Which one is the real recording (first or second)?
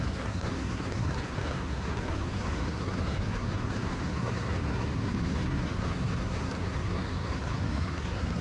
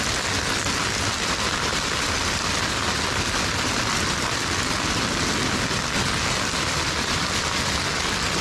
second